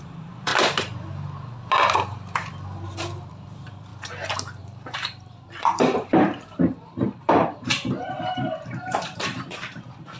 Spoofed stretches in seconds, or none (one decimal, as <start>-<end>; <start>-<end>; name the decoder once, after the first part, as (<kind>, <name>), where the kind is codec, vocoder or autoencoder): 0.0-0.5 (vocoder, BigVGAN v2); 3.3-3.9; 4.6-10.2